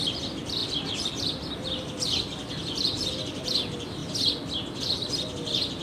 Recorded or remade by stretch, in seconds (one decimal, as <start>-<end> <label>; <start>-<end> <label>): 0.0-4.0 remade; 4.0-4.8 recorded; 4.8-5.8 remade